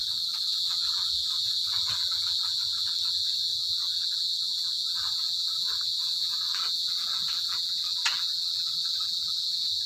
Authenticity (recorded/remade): remade